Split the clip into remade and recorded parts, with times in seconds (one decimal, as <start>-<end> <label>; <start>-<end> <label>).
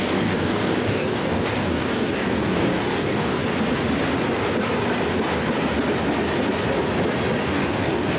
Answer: 0.0-3.4 remade; 3.4-7.4 recorded; 7.4-8.2 remade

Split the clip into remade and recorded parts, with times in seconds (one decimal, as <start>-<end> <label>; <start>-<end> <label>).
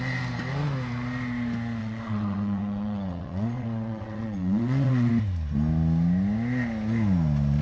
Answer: 0.0-1.8 recorded; 1.8-5.1 remade; 5.1-7.6 recorded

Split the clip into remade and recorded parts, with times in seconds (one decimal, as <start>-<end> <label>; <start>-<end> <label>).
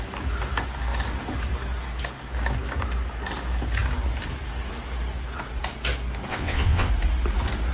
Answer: 0.0-6.3 recorded; 6.3-6.9 remade; 6.9-7.7 recorded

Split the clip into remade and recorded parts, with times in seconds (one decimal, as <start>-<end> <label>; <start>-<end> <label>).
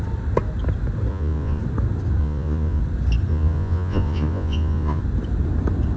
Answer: 0.0-1.1 recorded; 1.1-1.6 remade; 1.6-2.2 recorded; 2.2-2.8 remade; 2.8-3.3 recorded; 3.3-5.0 remade; 5.0-6.0 recorded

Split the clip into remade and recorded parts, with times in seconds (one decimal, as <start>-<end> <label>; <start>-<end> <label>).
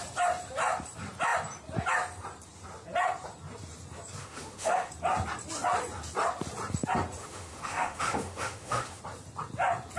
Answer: 0.0-4.2 recorded; 4.2-4.9 remade; 4.9-7.2 recorded; 7.2-9.0 remade; 9.0-10.0 recorded